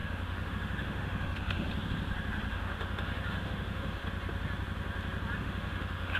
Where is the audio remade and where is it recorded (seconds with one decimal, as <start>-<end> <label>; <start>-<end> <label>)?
0.0-1.7 remade; 1.7-2.5 recorded; 2.5-4.0 remade; 4.0-5.4 recorded; 5.4-6.2 remade